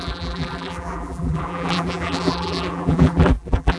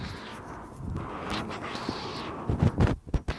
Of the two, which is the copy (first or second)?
first